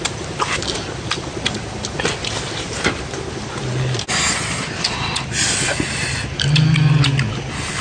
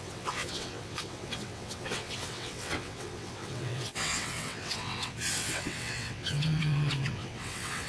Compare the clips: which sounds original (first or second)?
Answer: first